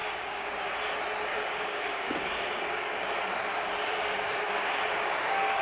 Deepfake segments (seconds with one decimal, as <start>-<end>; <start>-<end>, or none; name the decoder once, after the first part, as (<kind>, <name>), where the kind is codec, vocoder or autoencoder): 0.0-0.5 (codec, DAC); 1.3-3.1; 3.5-5.6